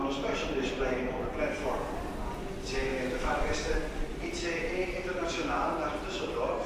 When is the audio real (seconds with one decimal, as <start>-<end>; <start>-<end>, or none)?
0.0-2.9; 3.5-6.7